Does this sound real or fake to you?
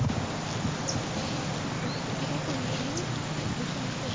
real